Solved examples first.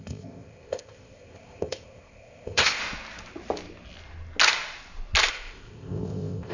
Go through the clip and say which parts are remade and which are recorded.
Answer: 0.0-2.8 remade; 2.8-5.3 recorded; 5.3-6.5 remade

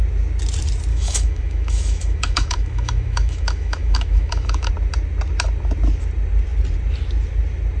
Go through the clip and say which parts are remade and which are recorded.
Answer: 0.0-0.9 recorded; 0.9-4.7 remade; 4.7-7.8 recorded